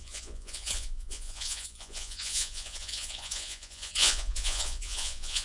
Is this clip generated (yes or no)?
yes